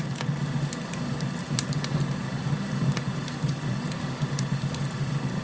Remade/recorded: recorded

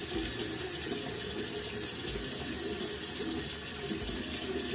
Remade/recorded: recorded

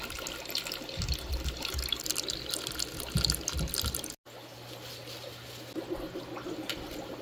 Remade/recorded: recorded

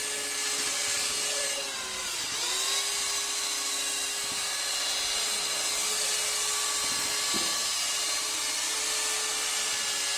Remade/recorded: recorded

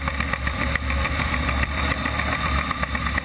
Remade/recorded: remade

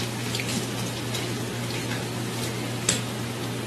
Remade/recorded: recorded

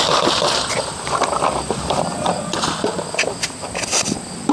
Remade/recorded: recorded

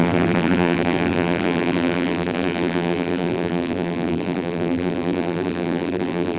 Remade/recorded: remade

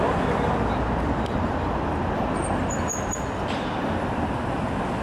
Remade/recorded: recorded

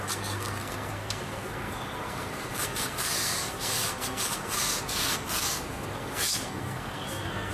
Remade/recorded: remade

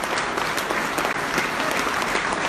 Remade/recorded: recorded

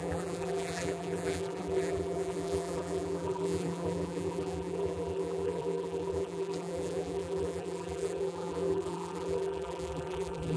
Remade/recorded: remade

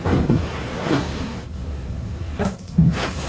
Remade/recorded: remade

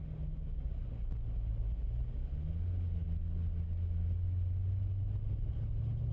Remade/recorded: recorded